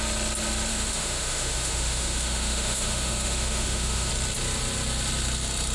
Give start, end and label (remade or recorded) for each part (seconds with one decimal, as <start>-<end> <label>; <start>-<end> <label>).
0.0-0.7 recorded; 0.7-4.1 remade; 4.1-5.7 recorded